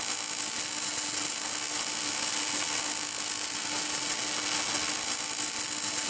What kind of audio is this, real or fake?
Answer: real